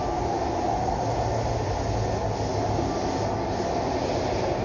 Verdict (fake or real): real